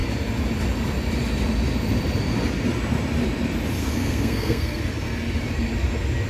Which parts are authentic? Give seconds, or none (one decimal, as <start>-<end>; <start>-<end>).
0.0-3.8; 4.8-6.3